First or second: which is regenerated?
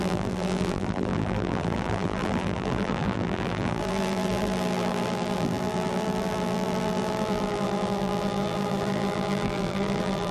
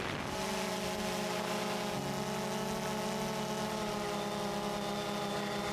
first